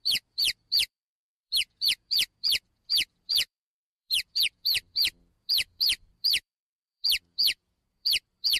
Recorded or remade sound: remade